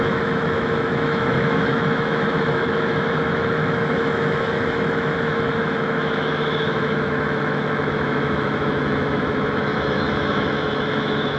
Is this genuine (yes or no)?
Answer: no